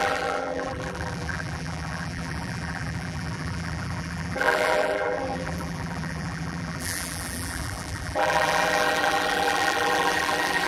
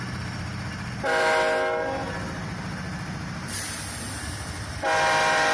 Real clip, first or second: second